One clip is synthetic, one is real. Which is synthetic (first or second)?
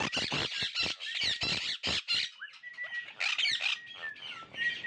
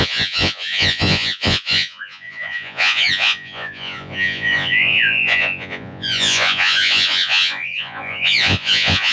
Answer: second